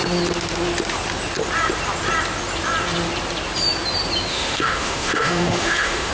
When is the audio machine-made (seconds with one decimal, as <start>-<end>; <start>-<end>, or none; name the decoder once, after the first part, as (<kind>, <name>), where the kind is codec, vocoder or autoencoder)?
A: 4.3-6.1 (autoencoder, DAC-VAE)